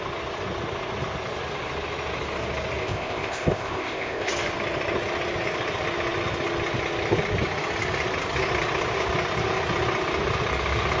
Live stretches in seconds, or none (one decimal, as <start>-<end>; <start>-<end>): 0.0-2.8; 4.3-11.0